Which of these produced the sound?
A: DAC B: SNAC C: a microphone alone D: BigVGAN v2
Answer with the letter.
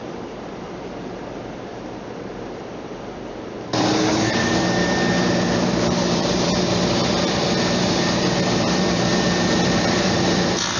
D